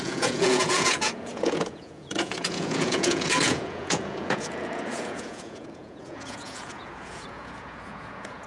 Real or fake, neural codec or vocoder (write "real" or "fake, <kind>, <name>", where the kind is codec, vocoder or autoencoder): fake, vocoder, Vocos